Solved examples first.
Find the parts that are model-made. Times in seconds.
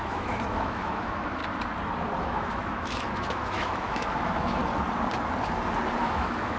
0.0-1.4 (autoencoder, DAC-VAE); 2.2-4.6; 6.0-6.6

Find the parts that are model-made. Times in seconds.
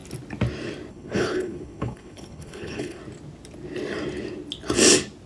0.9-3.0 (codec, HILCodec)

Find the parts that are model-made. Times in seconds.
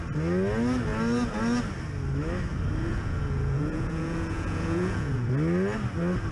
2.9-5.3 (vocoder, Vocos)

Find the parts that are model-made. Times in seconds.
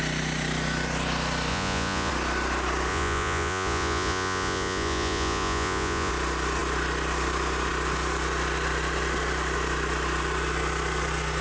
1.5-2.1 (vocoder, Vocos); 2.9-6.1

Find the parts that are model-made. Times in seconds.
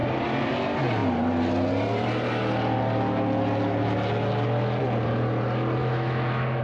5.8-6.6 (autoencoder, DAC-VAE)